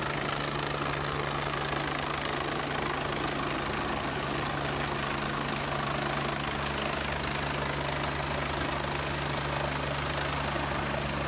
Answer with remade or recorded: recorded